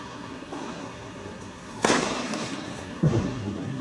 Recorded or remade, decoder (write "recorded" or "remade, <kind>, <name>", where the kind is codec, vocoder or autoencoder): remade, codec, SNAC